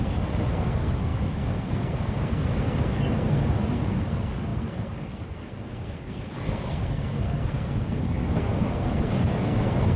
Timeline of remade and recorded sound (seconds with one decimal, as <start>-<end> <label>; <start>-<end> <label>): 0.0-10.0 remade